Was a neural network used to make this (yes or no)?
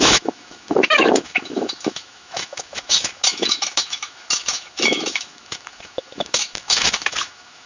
yes